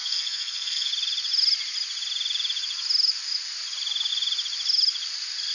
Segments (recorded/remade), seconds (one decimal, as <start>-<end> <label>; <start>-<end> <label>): 0.0-0.9 remade; 0.9-5.5 recorded

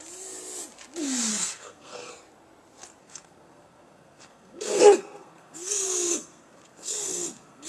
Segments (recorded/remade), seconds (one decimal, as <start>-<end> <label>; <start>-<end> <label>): 0.0-1.3 recorded; 1.3-2.1 remade; 2.1-3.0 recorded; 3.0-7.7 remade

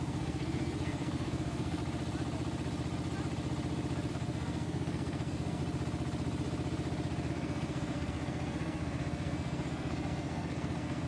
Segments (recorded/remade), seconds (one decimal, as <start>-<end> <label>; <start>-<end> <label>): 0.0-1.8 remade; 1.8-4.1 recorded; 4.1-5.6 remade; 5.6-7.3 recorded; 7.3-11.1 remade

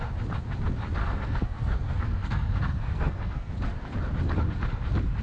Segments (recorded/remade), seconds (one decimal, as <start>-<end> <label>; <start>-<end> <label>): 0.0-1.0 recorded; 1.0-3.5 remade; 3.5-5.2 recorded